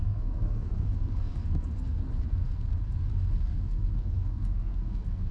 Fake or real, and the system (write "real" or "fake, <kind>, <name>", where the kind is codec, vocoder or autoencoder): fake, codec, SNAC